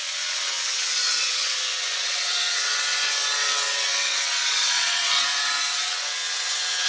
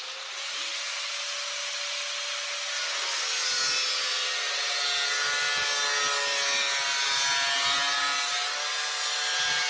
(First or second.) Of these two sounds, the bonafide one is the second